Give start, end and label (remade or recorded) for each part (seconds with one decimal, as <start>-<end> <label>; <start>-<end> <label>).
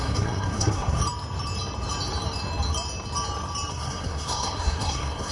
0.0-1.0 remade; 1.0-3.7 recorded; 3.7-5.3 remade